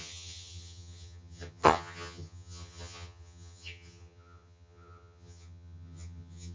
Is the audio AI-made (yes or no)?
yes